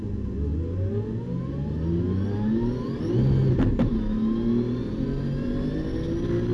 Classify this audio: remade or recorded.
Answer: recorded